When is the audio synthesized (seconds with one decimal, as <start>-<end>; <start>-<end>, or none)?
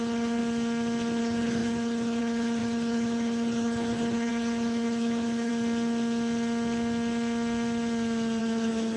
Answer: 0.0-0.4; 1.2-5.5; 8.4-9.0